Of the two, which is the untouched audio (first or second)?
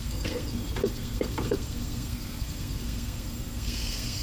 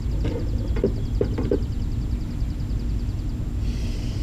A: second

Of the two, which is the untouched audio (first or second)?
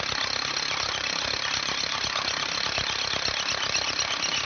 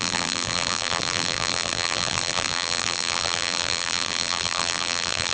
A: first